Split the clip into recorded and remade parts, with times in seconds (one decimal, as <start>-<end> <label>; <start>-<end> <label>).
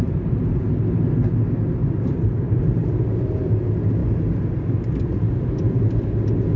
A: 0.0-0.7 remade; 0.7-1.8 recorded; 1.8-2.6 remade; 2.6-6.6 recorded